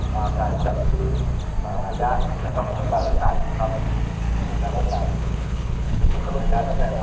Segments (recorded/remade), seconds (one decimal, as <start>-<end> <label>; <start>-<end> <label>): 0.0-0.5 recorded; 0.5-1.0 remade; 1.0-2.4 recorded; 2.4-3.3 remade; 3.3-5.2 recorded; 5.2-6.3 remade; 6.3-7.0 recorded